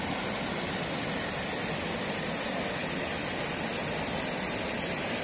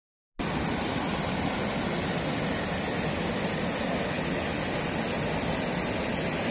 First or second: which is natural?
second